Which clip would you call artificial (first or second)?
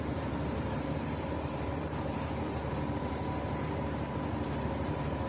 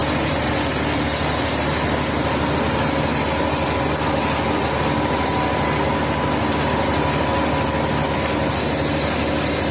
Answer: first